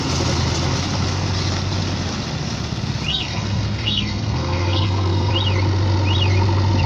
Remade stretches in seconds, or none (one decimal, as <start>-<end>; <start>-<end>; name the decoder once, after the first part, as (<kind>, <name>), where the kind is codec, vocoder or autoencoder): 3.1-5.3 (codec, SNAC)